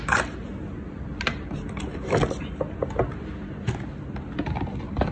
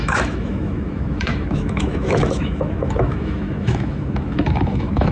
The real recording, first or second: first